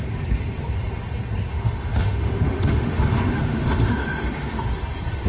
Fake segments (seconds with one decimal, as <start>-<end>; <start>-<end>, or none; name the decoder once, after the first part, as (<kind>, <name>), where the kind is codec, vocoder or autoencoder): 1.5-4.7 (autoencoder, DAC-VAE)